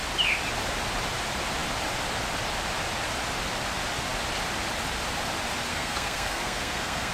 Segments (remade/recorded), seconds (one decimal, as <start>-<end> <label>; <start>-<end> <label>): 0.0-5.7 recorded; 5.7-7.1 remade